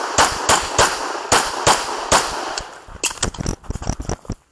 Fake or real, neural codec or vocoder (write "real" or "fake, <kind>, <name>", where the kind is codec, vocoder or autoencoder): real